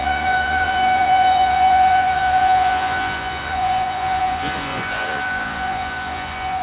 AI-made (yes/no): yes